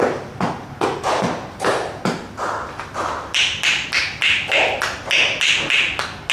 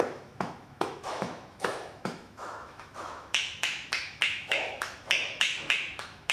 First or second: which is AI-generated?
second